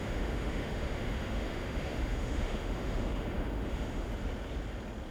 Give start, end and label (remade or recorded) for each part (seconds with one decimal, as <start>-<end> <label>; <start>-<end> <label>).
0.0-4.1 remade; 4.1-5.1 recorded